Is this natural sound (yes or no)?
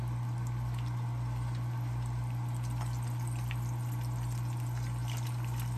yes